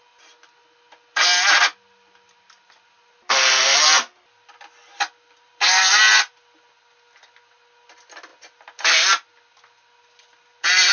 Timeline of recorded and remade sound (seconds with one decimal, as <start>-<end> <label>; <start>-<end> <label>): 0.0-10.9 recorded

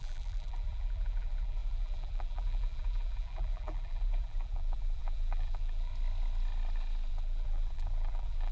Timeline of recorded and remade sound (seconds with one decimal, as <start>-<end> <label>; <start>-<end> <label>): 0.0-5.9 remade; 5.9-7.1 recorded; 7.1-8.5 remade

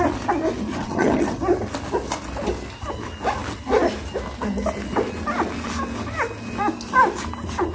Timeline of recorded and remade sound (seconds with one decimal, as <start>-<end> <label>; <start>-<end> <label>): 0.0-0.7 recorded; 0.7-1.4 remade; 1.4-7.7 recorded

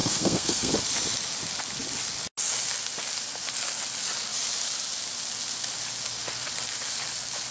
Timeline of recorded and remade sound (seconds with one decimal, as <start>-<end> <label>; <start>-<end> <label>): 0.0-0.7 remade; 0.7-7.5 recorded

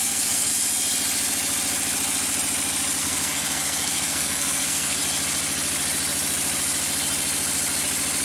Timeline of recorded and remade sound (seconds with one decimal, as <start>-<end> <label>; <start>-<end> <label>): 0.0-0.5 remade; 0.5-3.0 recorded; 3.0-5.0 remade; 5.0-8.2 recorded